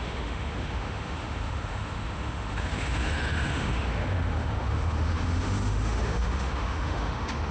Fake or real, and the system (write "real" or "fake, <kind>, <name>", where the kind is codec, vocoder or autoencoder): fake, autoencoder, DAC-VAE